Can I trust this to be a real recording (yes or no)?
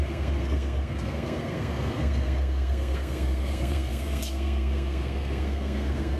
no